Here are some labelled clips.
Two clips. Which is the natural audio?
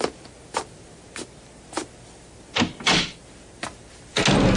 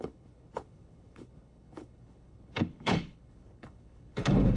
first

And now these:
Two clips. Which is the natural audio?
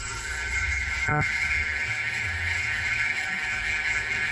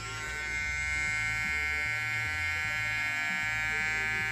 second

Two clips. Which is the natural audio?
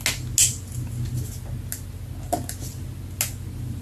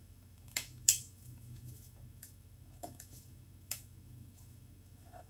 first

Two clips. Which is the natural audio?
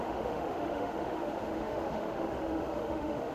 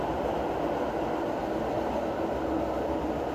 second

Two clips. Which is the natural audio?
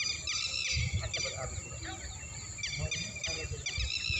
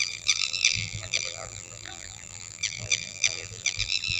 first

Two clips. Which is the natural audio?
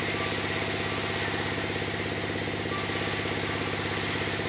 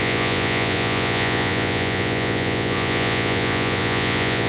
first